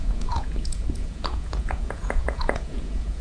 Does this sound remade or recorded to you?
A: remade